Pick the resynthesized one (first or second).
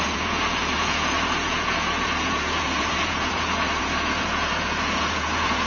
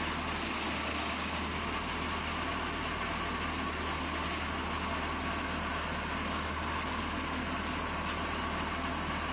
first